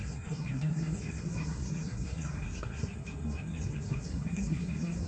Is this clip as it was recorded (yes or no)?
no